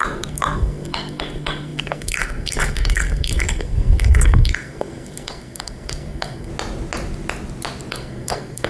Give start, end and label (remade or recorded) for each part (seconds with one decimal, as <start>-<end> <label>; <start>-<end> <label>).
0.0-6.5 remade; 6.5-7.9 recorded; 7.9-8.7 remade

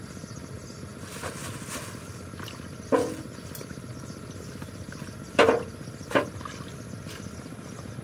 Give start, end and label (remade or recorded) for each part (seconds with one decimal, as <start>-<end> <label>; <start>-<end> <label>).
0.0-8.0 recorded